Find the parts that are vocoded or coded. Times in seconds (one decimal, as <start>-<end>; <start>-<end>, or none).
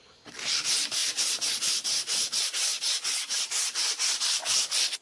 1.0-1.6